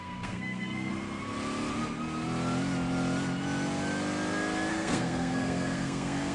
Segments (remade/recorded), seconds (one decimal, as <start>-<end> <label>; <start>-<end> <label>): 0.0-0.9 remade; 0.9-4.7 recorded; 4.7-6.3 remade